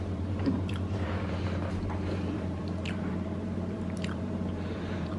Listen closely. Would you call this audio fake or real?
fake